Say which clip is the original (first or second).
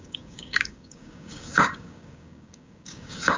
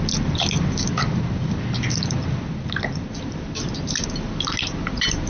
second